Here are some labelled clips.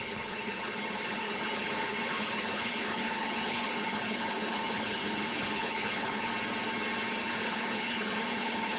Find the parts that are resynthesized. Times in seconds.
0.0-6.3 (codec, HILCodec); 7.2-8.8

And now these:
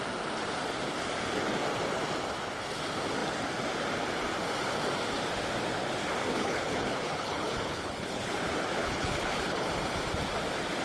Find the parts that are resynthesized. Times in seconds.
6.3-8.4 (codec, HILCodec); 8.8-9.7

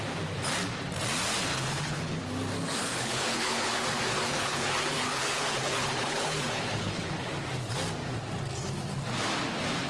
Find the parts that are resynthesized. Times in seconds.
1.5-2.2 (codec, HILCodec); 2.8-7.3

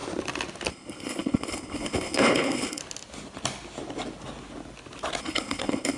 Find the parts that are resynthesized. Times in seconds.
0.7-2.8 (codec, HILCodec); 5.2-6.0

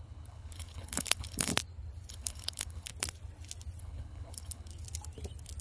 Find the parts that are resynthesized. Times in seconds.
0.0-1.5 (codec, HILCodec); 2.1-2.9; 3.8-4.7

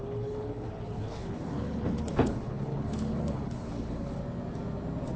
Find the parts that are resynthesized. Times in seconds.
0.0-4.2 (codec, HILCodec)